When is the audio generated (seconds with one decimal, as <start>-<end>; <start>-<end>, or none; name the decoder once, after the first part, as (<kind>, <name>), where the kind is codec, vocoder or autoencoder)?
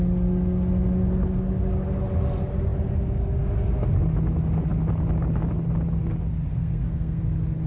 6.5-7.2 (codec, SNAC)